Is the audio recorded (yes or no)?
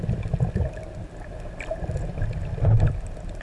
yes